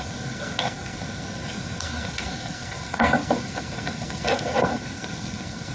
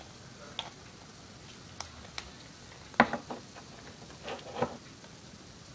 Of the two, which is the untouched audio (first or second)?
second